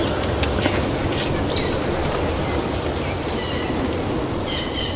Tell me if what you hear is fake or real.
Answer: real